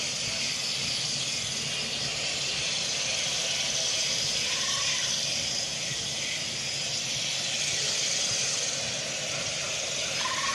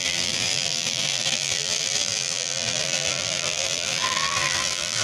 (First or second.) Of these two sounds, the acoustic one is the first